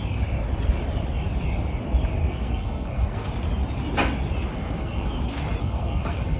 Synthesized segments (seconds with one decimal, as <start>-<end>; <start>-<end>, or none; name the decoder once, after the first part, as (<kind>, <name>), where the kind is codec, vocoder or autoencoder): 2.2-3.3 (codec, SNAC); 4.5-5.1; 5.6-6.4